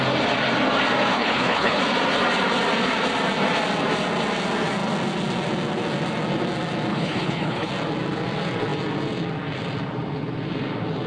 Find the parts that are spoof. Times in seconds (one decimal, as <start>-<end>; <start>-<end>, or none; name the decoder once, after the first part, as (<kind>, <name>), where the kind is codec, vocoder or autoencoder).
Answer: 1.1-1.8 (codec, HILCodec); 6.9-7.7